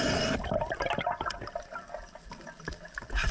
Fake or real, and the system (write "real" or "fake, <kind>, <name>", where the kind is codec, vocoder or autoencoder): real